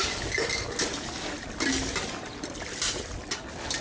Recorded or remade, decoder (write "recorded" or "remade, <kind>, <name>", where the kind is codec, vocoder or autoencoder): recorded